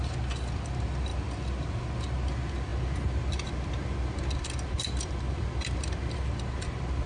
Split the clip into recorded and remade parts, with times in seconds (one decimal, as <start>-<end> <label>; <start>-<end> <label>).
0.0-7.1 recorded